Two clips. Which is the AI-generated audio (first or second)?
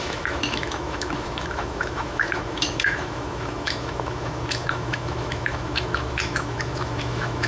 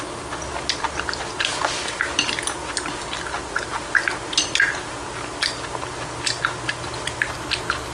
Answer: first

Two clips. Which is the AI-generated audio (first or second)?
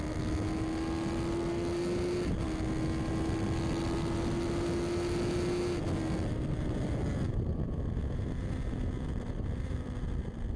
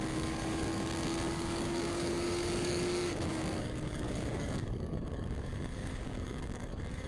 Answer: second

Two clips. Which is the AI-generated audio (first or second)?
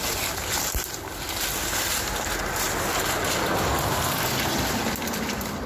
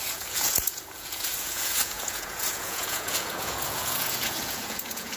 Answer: second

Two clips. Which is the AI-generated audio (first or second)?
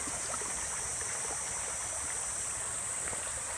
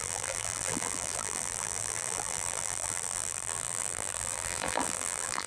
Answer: second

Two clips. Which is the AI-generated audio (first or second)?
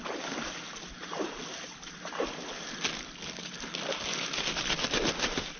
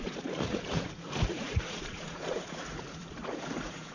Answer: second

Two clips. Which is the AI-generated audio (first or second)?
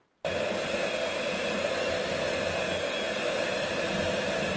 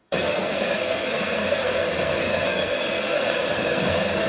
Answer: second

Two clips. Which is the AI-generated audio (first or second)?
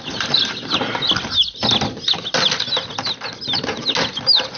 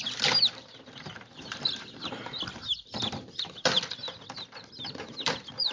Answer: second